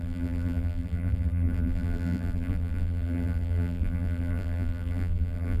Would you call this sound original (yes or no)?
no